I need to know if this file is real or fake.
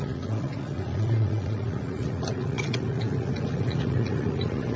fake